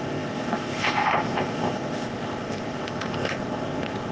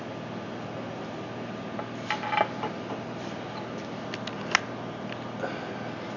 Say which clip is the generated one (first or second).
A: first